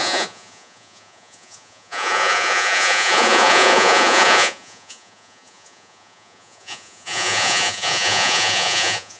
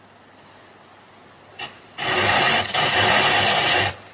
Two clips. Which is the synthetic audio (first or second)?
first